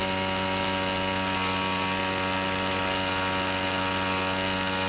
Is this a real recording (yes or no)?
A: yes